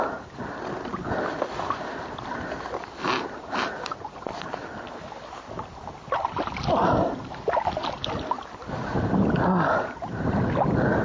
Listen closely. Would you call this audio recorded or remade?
recorded